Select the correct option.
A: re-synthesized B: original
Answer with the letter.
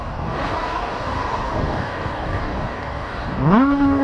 A